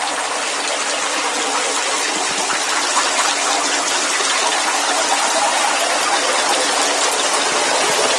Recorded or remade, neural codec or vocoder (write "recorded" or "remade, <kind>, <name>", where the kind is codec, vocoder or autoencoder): recorded